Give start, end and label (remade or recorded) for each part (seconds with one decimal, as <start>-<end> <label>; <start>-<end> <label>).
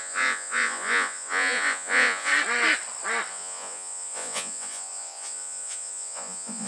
0.0-2.3 remade; 2.3-3.3 recorded; 3.3-6.7 remade